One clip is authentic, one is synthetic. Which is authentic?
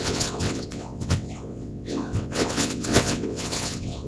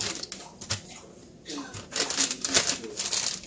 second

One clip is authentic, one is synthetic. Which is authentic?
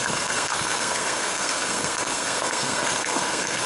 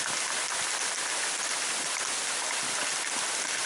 second